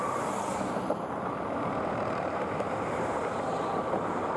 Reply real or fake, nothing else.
fake